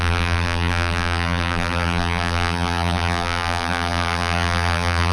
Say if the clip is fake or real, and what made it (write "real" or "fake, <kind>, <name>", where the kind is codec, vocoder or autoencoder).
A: fake, vocoder, BigVGAN v2